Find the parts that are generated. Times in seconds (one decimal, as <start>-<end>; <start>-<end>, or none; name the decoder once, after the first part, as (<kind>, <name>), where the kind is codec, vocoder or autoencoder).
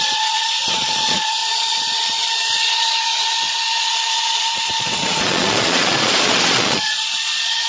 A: 0.0-7.7 (vocoder, Vocos)